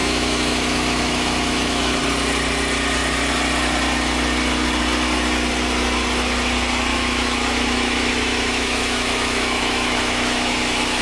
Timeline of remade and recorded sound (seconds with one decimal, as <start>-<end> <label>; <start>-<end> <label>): 0.0-2.0 remade; 2.0-6.9 recorded; 6.9-11.0 remade